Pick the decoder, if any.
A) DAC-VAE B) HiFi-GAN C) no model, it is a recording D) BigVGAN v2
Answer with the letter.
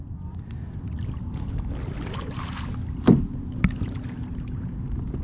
C